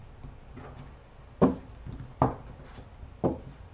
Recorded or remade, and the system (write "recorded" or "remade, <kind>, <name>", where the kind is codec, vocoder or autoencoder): recorded